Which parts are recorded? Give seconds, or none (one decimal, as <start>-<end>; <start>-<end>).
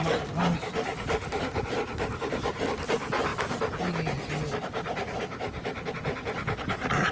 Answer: 0.0-0.9; 1.6-7.1